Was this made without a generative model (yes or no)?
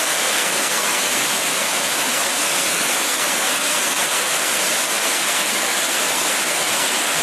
no